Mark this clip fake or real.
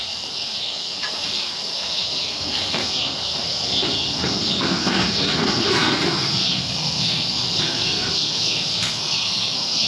fake